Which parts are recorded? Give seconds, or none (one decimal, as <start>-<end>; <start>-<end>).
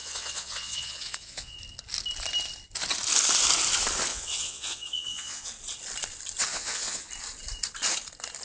1.6-4.1; 5.5-6.5; 7.1-8.4